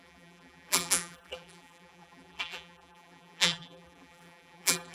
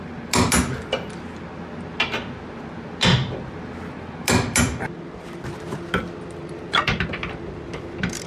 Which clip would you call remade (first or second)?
first